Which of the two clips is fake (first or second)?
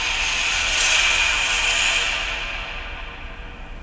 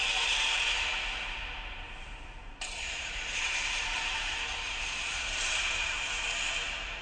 second